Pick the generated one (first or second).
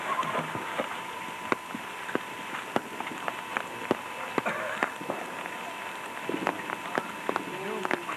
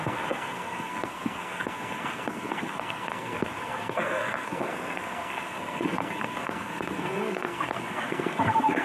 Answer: second